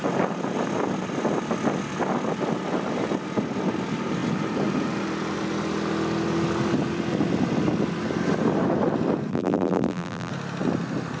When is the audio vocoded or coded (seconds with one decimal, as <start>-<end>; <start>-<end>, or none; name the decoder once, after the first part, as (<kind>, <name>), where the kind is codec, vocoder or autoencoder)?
9.3-10.3 (vocoder, BigVGAN v2)